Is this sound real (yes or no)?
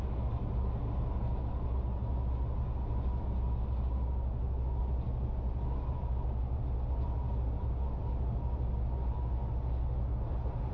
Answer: yes